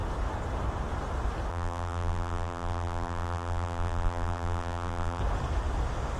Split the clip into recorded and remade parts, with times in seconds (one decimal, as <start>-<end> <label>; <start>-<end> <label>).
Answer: 0.0-1.5 recorded; 1.5-5.2 remade; 5.2-6.2 recorded

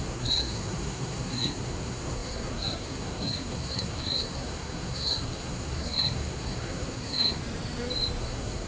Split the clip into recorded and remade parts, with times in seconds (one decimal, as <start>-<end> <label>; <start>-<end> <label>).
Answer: 0.0-7.4 remade; 7.4-8.2 recorded; 8.2-8.7 remade

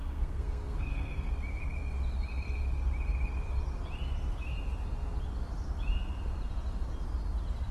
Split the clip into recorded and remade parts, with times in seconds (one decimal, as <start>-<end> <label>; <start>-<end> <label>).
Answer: 0.0-1.3 remade; 1.3-7.7 recorded